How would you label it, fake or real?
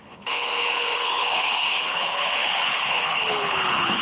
fake